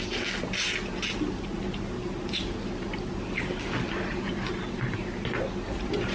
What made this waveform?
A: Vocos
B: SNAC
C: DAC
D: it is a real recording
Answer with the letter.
D